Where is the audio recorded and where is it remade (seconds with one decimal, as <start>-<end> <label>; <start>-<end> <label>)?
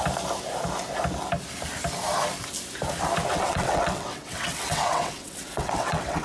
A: 0.0-3.3 recorded; 3.3-6.2 remade